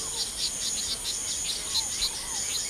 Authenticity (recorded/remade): recorded